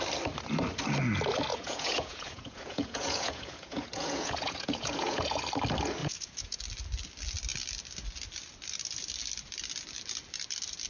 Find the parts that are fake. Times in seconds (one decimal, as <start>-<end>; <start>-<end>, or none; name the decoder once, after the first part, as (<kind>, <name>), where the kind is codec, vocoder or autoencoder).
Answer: 1.5-5.4 (vocoder, Vocos); 6.0-6.6